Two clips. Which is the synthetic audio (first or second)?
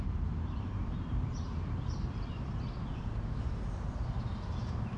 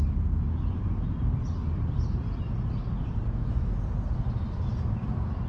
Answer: first